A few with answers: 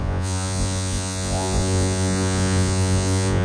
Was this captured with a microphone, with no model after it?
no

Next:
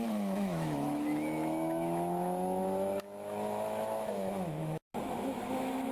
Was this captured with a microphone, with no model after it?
no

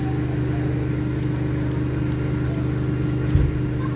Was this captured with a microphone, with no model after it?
yes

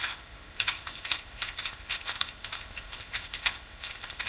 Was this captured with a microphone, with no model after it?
no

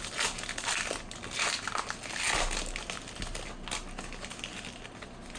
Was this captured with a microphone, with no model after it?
yes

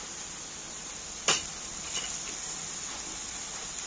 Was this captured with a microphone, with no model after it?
yes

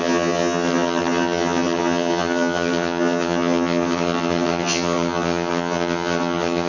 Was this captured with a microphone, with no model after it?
no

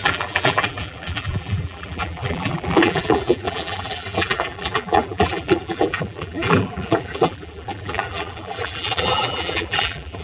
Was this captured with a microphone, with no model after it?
no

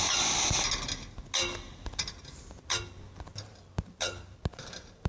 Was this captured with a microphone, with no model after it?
yes